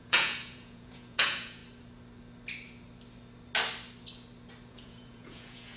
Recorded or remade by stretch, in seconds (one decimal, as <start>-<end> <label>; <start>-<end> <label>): 0.0-1.6 remade; 1.6-4.7 recorded; 4.7-5.8 remade